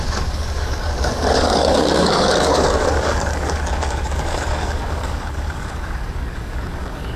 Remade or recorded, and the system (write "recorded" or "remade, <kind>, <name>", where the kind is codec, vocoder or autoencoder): remade, codec, DAC